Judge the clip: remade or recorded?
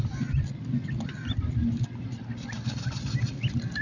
remade